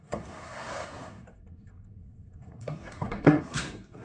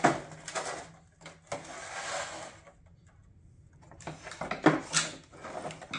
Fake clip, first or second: first